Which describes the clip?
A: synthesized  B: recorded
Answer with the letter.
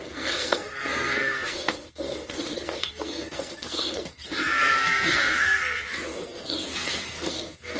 A